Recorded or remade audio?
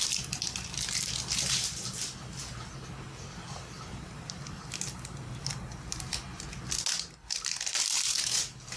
recorded